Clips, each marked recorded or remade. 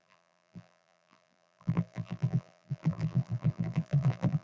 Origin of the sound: remade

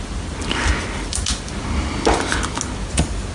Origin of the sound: recorded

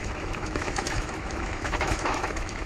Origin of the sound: remade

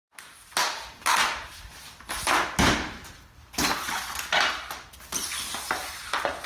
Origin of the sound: recorded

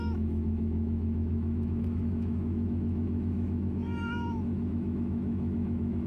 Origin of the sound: remade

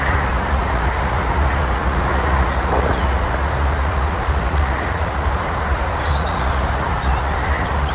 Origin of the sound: remade